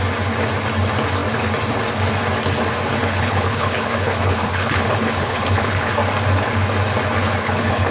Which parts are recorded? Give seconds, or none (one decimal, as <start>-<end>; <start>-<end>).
0.0-2.9; 5.9-7.2